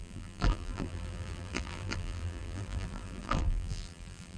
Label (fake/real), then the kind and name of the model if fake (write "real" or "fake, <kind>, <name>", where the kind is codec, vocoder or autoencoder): fake, vocoder, BigVGAN v2